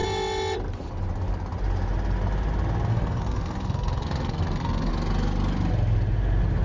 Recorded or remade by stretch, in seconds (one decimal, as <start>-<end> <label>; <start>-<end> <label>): 0.0-2.9 recorded; 2.9-4.9 remade; 4.9-6.6 recorded